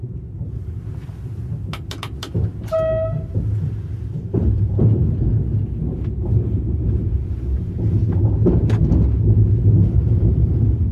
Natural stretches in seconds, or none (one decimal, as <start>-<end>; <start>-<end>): 1.0-3.6; 5.3-5.8; 8.0-9.7